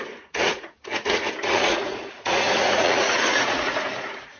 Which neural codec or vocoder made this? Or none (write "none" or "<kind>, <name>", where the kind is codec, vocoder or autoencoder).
vocoder, Vocos